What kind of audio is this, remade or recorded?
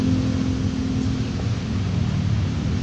recorded